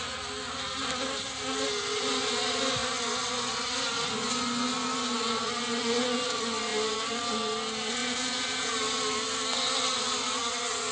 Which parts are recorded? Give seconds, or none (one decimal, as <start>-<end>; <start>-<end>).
0.0-8.0; 8.7-10.9